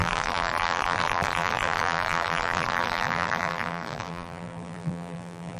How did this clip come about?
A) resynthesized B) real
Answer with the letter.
A